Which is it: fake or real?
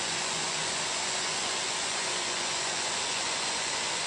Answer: fake